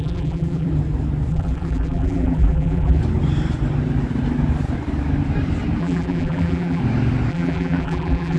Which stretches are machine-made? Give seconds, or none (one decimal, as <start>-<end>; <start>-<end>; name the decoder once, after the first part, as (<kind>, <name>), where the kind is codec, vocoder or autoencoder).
0.0-0.7 (vocoder, BigVGAN v2); 1.3-3.0; 5.8-6.8; 7.3-8.4